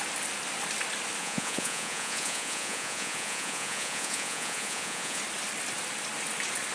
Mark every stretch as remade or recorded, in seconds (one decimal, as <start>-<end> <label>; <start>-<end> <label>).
0.0-1.2 recorded; 1.2-5.2 remade; 5.2-6.7 recorded